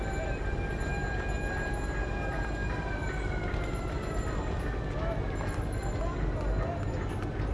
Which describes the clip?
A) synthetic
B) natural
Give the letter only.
B